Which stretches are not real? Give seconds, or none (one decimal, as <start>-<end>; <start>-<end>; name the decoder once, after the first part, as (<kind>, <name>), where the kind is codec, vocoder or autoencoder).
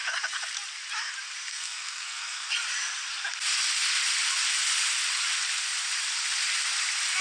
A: 1.5-2.5 (codec, SNAC)